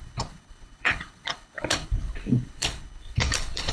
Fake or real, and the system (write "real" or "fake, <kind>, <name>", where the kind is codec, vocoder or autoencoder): fake, codec, HILCodec